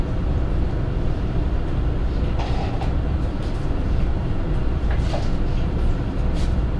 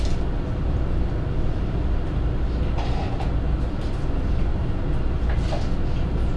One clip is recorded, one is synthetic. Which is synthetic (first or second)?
first